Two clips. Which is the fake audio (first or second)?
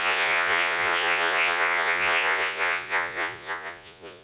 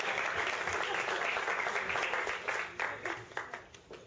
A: first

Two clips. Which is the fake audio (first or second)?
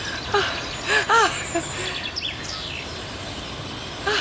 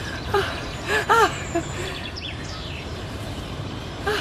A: second